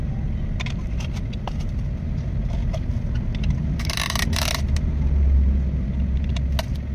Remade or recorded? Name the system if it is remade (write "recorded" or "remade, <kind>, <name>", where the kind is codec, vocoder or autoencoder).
recorded